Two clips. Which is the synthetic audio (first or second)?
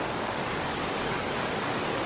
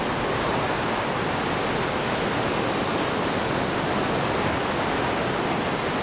first